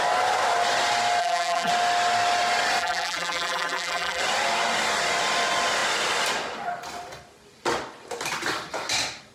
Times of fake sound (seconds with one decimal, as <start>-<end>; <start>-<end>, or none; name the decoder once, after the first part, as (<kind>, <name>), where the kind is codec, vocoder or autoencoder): 1.2-1.7 (vocoder, BigVGAN v2); 2.8-4.2